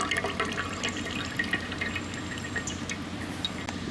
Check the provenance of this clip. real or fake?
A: real